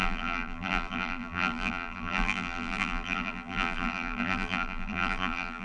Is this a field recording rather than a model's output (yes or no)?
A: no